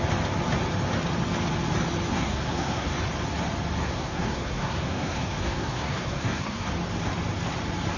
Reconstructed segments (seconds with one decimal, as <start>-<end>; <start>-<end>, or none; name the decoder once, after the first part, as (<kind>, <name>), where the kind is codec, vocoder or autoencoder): 2.1-2.9 (codec, SNAC); 3.8-6.7